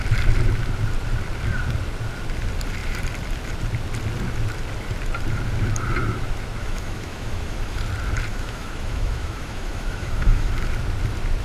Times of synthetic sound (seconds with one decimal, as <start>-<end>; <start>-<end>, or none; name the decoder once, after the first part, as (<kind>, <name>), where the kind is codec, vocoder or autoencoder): 6.6-7.8 (autoencoder, DAC-VAE); 8.3-10.5